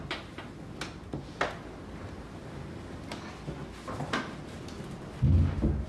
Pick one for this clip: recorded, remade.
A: recorded